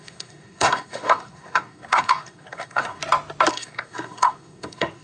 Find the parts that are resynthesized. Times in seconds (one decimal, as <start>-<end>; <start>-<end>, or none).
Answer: 0.0-3.0; 3.5-5.0